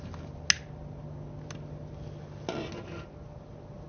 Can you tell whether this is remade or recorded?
recorded